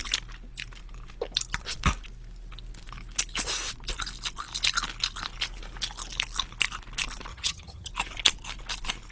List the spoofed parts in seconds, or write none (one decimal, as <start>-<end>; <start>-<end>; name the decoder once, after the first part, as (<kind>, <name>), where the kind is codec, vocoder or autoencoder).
7.3-7.9 (vocoder, HiFi-GAN)